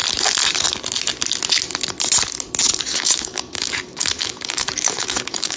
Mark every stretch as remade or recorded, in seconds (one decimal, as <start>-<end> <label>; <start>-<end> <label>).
0.0-2.8 recorded; 2.8-5.6 remade